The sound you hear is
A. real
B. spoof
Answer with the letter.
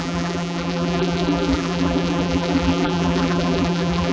B